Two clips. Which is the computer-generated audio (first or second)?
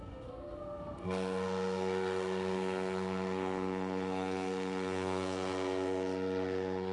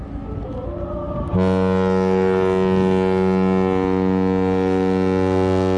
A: first